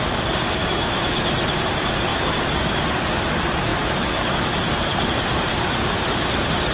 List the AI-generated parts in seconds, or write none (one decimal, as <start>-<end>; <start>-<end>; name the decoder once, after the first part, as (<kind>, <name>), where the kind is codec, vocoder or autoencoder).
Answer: 0.6-1.2 (autoencoder, DAC-VAE); 2.1-2.8; 3.7-4.6